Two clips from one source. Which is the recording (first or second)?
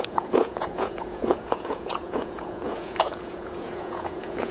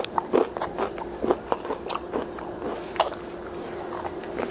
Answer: second